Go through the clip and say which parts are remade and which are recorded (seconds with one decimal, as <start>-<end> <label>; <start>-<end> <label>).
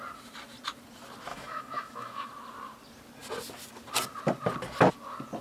0.0-1.3 recorded; 1.3-2.3 remade; 2.3-5.4 recorded